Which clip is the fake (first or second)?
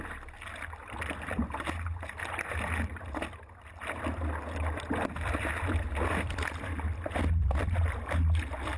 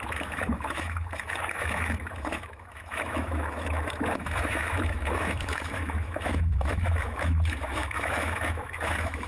second